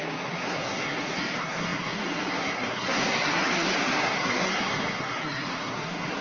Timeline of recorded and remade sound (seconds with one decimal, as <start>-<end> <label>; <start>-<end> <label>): 0.0-6.2 remade